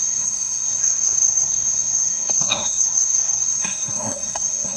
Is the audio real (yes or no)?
no